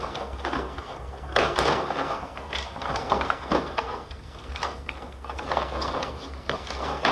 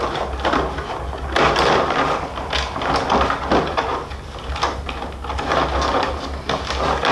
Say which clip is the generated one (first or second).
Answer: first